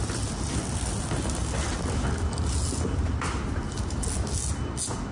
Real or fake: real